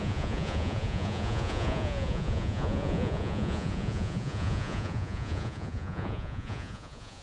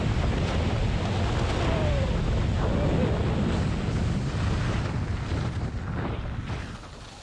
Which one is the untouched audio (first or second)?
second